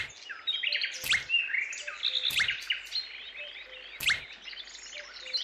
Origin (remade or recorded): recorded